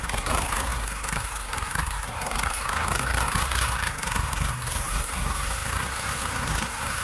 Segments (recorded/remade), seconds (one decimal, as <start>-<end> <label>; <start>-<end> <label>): 0.0-7.0 remade